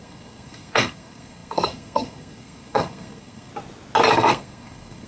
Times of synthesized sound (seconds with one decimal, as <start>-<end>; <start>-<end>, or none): 0.0-3.5; 4.1-5.1